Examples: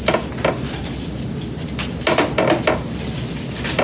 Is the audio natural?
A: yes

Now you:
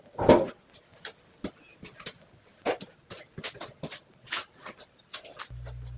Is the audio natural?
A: yes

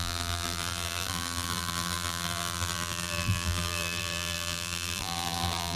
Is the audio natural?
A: no